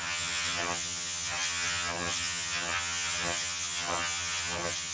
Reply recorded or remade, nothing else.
remade